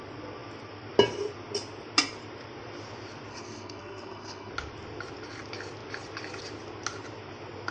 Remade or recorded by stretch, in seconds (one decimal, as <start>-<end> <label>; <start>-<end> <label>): 0.0-3.3 recorded; 3.3-4.5 remade; 4.5-7.7 recorded